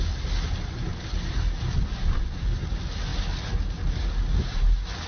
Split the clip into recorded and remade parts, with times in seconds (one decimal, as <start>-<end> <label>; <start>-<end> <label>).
0.0-5.1 recorded